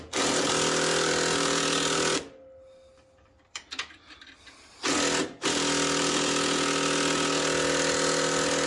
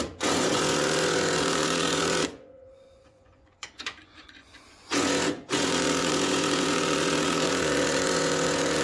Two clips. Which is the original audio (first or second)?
first